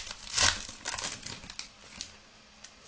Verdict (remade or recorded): recorded